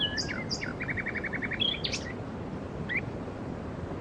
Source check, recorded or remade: recorded